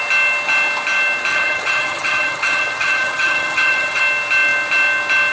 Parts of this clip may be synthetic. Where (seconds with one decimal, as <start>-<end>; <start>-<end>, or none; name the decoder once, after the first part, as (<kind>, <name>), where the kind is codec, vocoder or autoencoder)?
1.3-4.0 (vocoder, HiFi-GAN)